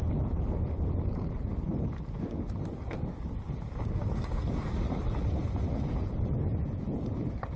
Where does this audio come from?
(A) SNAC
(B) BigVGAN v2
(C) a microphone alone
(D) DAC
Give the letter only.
C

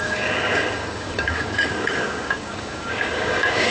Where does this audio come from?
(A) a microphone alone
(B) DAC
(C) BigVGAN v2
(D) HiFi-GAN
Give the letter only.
B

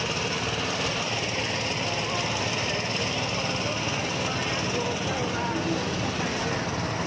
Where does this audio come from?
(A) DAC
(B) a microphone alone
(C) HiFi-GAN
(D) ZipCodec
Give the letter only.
B